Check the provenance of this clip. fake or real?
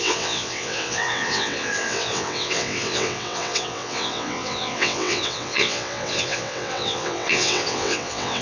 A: fake